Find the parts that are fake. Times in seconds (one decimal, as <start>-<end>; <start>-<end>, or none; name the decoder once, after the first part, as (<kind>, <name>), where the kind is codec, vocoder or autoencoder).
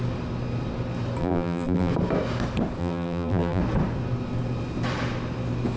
1.2-1.9 (vocoder, BigVGAN v2); 2.8-3.6